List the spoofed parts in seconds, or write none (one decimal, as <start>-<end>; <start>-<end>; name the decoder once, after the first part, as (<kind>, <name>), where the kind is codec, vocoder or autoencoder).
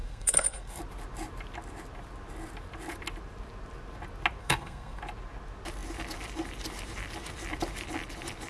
0.0-0.8 (codec, SNAC); 4.4-5.0